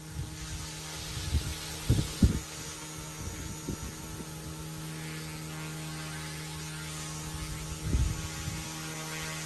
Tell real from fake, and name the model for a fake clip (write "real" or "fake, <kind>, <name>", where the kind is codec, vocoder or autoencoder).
real